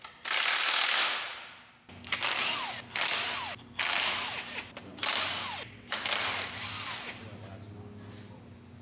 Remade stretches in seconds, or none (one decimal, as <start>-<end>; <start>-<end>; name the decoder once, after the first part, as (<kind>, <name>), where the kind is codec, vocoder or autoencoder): none